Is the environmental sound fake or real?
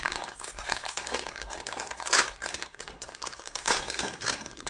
fake